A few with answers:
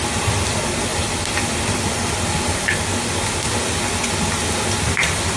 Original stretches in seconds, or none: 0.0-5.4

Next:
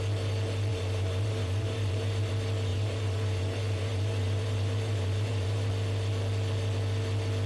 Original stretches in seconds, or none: 0.0-0.7; 2.3-2.7; 5.7-7.5